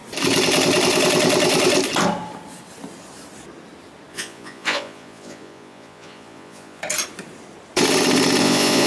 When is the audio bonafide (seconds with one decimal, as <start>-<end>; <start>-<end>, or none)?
0.0-4.1; 6.8-8.4